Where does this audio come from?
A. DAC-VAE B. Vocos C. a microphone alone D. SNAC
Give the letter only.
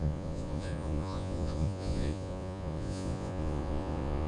B